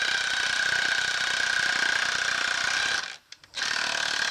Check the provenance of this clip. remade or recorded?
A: recorded